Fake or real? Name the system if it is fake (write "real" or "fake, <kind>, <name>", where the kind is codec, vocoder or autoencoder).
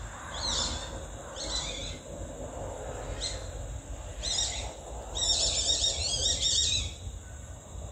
real